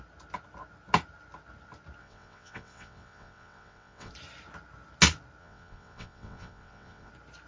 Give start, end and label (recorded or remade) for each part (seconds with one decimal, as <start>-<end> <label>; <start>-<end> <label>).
0.0-2.0 recorded; 2.0-4.1 remade; 4.1-5.4 recorded; 5.4-7.1 remade; 7.1-7.5 recorded